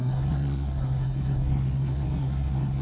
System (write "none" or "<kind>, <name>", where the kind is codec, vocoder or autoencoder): codec, SNAC